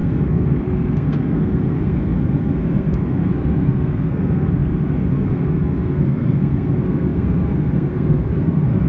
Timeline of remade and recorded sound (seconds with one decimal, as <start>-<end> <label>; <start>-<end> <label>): 0.0-8.9 remade

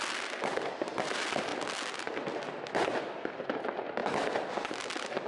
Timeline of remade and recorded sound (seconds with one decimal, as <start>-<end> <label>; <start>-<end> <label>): 0.0-5.3 recorded

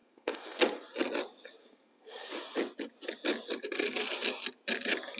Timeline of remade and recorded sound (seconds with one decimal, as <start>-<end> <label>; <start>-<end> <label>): 0.0-0.6 remade; 0.6-1.6 recorded; 1.6-2.3 remade; 2.3-5.2 recorded

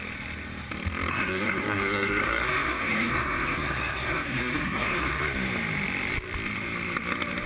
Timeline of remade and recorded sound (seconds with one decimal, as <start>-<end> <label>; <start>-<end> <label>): 0.0-1.1 recorded; 1.1-5.2 remade; 5.2-7.5 recorded

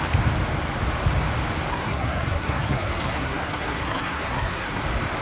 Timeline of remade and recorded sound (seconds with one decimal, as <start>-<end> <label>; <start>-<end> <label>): 0.0-1.7 recorded; 1.7-4.8 remade; 4.8-5.2 recorded